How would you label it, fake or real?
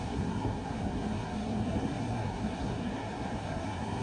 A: fake